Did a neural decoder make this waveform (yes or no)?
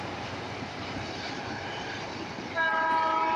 yes